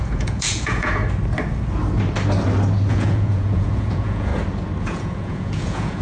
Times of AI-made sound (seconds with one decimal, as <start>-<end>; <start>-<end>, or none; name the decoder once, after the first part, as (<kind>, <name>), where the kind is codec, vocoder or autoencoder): 0.0-1.0 (vocoder, Vocos); 2.9-4.3; 4.8-6.0